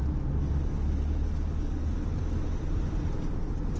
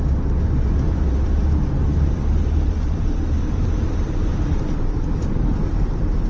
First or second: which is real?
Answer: first